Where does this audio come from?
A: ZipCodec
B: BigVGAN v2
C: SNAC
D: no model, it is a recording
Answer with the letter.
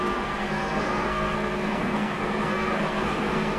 C